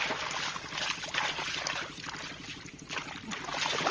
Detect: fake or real real